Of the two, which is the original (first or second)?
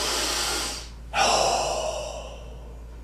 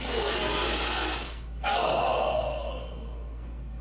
first